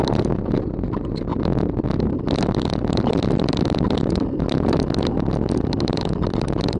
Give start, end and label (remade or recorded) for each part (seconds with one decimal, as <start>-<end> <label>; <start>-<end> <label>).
0.0-6.8 recorded